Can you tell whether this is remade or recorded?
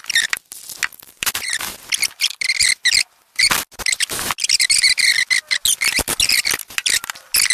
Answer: recorded